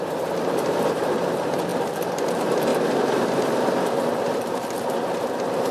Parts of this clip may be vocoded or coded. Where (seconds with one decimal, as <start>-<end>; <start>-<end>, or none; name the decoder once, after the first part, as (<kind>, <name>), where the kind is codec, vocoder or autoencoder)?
0.0-5.7 (vocoder, BigVGAN v2)